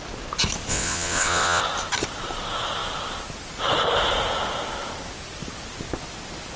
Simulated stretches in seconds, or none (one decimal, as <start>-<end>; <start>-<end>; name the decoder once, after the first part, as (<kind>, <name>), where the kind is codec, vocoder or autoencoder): 0.7-1.6 (vocoder, WaveNeXt)